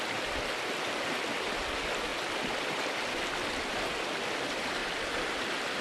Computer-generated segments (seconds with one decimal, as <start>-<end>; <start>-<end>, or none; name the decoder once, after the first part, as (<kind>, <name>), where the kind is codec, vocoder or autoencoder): none